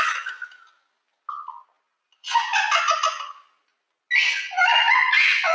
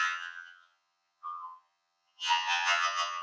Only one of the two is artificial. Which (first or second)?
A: second